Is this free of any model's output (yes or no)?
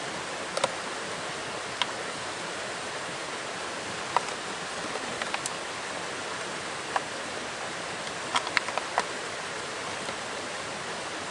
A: yes